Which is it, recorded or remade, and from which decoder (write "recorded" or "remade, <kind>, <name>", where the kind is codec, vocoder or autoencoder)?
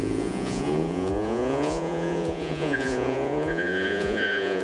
remade, vocoder, Vocos